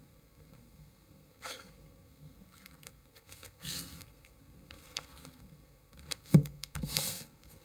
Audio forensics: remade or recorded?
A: remade